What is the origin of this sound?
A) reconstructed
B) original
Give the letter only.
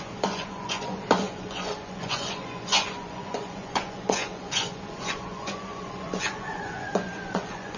A